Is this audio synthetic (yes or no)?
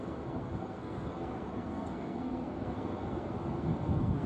yes